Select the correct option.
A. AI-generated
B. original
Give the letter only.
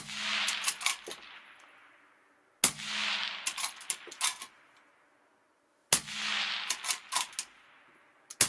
B